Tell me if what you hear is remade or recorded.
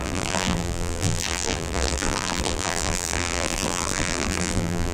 remade